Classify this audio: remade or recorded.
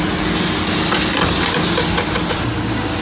recorded